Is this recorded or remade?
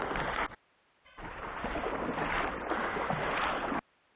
recorded